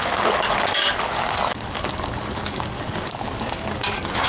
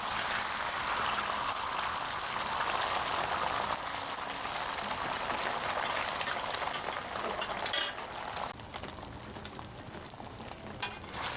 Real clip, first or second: second